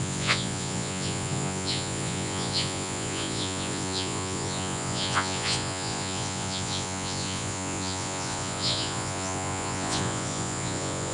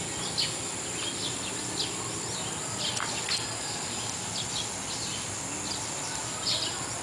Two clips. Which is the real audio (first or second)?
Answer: second